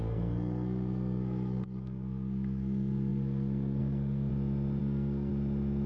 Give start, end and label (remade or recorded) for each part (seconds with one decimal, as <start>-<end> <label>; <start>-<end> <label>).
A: 0.0-4.3 remade; 4.3-4.8 recorded; 4.8-5.3 remade; 5.3-5.9 recorded